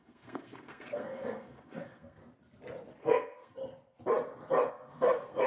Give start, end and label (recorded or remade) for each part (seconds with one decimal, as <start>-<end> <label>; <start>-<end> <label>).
0.0-2.2 remade; 2.2-3.0 recorded; 3.0-3.6 remade; 3.6-4.7 recorded; 4.7-5.5 remade